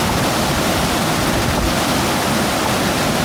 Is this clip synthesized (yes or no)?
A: no